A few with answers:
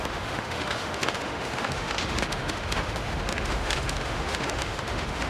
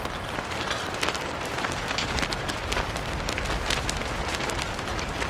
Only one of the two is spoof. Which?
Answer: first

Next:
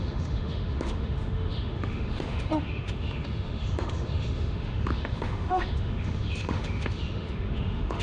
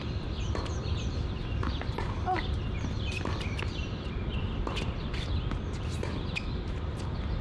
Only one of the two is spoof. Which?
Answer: first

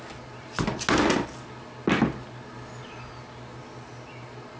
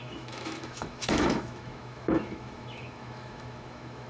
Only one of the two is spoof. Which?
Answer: second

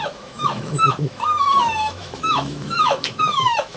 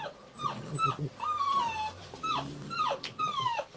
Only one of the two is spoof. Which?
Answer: first